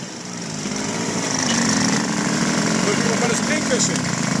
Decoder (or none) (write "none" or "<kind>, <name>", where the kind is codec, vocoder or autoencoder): vocoder, BigVGAN v2